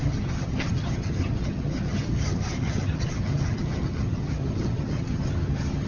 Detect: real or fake fake